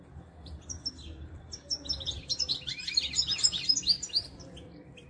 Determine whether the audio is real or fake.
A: real